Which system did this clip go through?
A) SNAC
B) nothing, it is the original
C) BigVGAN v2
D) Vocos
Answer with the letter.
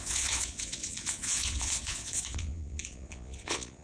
D